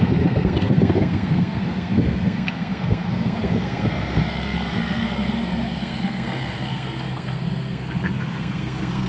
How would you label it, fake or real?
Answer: fake